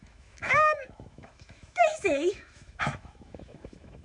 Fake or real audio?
fake